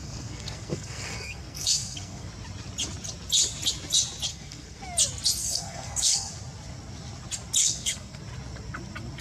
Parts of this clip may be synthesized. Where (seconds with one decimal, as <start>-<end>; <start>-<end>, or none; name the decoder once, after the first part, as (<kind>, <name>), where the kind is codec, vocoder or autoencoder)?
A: 0.0-2.3 (codec, SNAC); 4.3-4.8; 5.4-6.3; 7.6-8.2